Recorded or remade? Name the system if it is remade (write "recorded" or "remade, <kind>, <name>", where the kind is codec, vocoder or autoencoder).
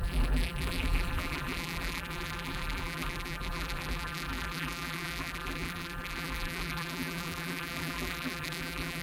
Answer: remade, vocoder, BigVGAN v2